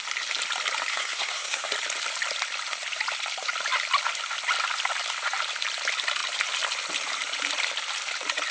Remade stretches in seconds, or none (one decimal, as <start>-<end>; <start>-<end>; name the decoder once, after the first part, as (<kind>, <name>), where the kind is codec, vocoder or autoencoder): 0.9-1.7 (codec, SNAC)